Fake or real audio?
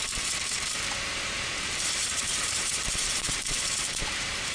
fake